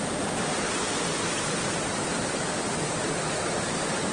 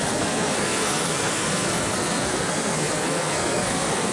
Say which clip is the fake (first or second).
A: second